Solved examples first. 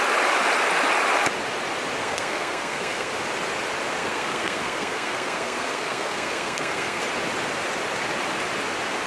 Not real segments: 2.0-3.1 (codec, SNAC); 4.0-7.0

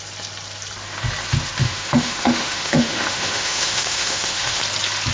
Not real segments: 1.6-4.6 (autoencoder, DAC-VAE)

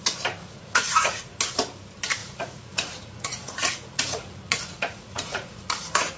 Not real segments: 0.4-1.4 (vocoder, Vocos); 2.2-6.2

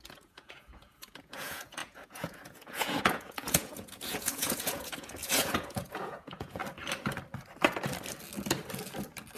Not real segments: 0.0-6.6 (vocoder, Vocos)

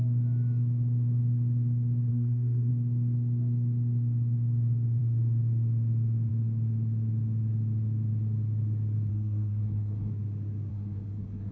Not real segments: 2.1-2.7 (codec, SNAC); 9.1-10.1; 10.7-11.5

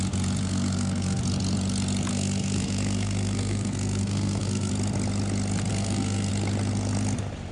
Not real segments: 0.4-1.2 (codec, SNAC); 2.1-4.7; 5.7-6.3

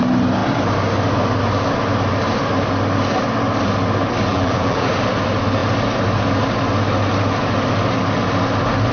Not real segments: 4.3-4.9 (vocoder, BigVGAN v2)

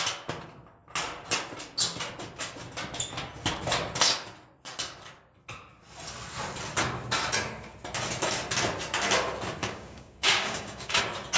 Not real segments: 9.6-11.0 (codec, DAC)